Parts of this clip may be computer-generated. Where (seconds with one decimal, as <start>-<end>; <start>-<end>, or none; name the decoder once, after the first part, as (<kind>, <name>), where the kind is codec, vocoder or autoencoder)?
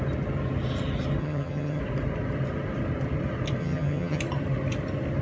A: 1.2-1.8 (vocoder, HiFi-GAN); 3.6-4.2